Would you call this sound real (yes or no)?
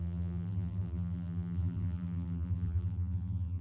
no